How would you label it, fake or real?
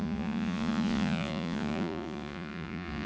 fake